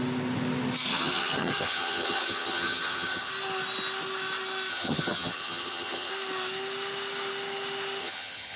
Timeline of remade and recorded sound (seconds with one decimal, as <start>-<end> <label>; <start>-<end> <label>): 0.0-0.9 recorded; 0.9-3.3 remade; 3.3-4.7 recorded; 4.7-6.1 remade; 6.1-8.0 recorded; 8.0-8.6 remade